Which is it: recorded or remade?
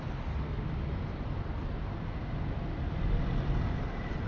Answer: recorded